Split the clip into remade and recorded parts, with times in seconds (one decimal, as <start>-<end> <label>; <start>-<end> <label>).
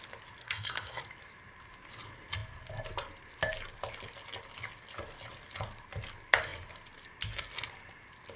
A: 0.0-0.4 recorded; 0.4-1.0 remade; 1.0-8.4 recorded